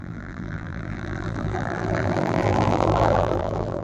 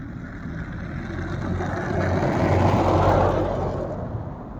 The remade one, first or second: first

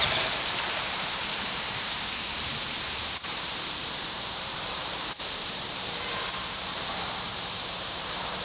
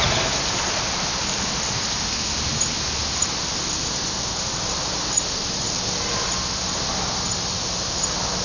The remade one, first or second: first